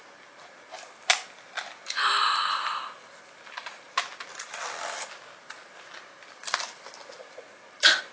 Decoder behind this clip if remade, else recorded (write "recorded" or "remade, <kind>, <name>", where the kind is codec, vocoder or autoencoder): recorded